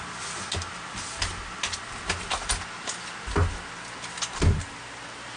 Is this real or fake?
real